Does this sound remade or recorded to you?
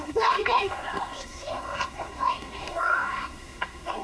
remade